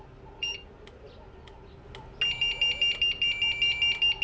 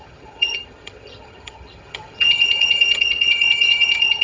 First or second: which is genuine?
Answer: first